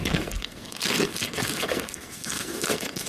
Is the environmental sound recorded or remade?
remade